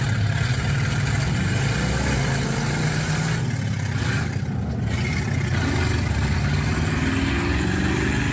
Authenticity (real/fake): real